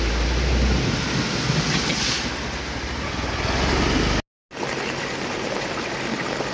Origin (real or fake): real